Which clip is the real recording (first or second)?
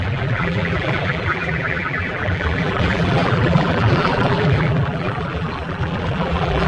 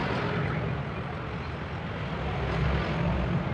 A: second